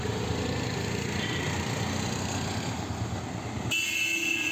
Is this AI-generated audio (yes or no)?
no